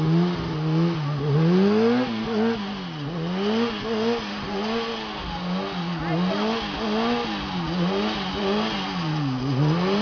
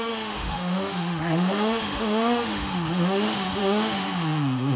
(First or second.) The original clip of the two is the first